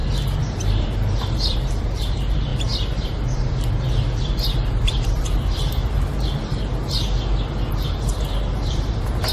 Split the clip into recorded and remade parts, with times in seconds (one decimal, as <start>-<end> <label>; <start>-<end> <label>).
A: 0.0-2.5 remade; 2.5-4.7 recorded; 4.7-6.5 remade; 6.5-7.7 recorded; 7.7-9.3 remade